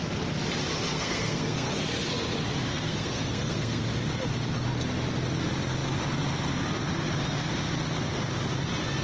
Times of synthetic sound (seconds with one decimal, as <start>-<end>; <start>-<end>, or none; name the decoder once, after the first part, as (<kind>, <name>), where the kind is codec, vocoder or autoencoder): 0.9-1.7 (codec, SNAC); 2.7-3.8